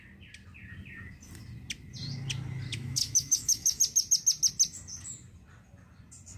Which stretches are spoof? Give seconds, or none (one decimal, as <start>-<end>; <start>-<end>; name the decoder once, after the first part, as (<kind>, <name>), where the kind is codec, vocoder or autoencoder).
2.7-3.8 (autoencoder, DAC-VAE)